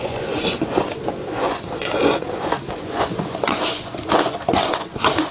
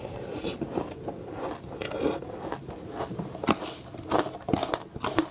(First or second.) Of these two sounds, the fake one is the first